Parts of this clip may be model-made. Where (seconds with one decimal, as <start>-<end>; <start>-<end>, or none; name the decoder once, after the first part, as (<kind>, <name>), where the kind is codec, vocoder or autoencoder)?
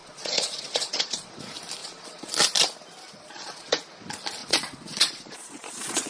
0.0-1.3 (vocoder, Vocos); 1.8-2.3; 3.2-3.8; 4.4-6.1